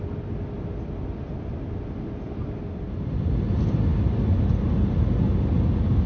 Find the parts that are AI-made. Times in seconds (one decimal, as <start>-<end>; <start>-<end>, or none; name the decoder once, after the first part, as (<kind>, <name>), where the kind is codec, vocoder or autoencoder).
none